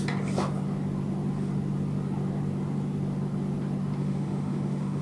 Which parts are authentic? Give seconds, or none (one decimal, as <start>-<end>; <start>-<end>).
0.0-4.0